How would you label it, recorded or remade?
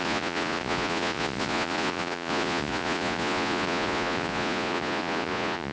remade